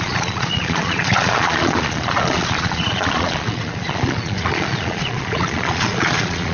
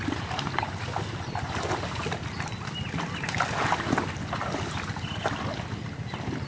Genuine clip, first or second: second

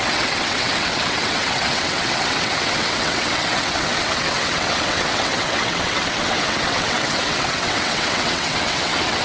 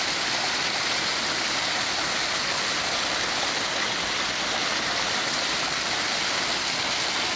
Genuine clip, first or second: second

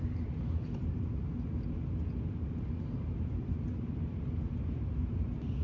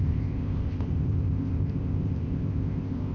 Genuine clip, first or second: first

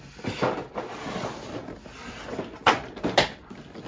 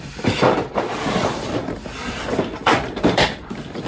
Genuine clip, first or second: first